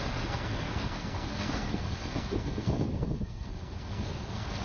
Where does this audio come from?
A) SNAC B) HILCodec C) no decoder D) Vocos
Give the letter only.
A